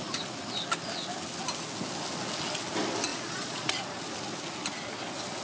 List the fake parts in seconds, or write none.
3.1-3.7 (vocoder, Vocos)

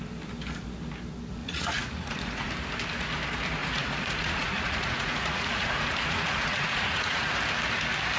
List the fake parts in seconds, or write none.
1.4-2.5 (vocoder, Vocos); 3.6-7.3

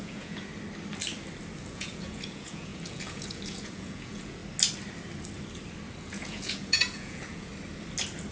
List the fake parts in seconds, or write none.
0.0-0.5 (vocoder, Vocos); 1.6-4.4; 6.0-7.5